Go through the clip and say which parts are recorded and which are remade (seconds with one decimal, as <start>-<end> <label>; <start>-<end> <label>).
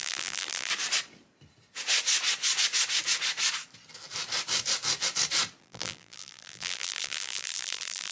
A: 0.0-0.7 remade; 0.7-5.6 recorded; 5.6-8.1 remade